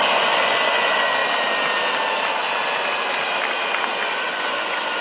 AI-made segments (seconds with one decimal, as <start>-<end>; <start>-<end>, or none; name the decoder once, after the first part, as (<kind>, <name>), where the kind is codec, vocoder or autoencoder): 0.0-1.2 (vocoder, Vocos); 4.0-5.0